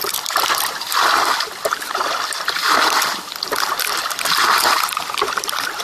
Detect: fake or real fake